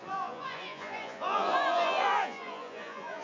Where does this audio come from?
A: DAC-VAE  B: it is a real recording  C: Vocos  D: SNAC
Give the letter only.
C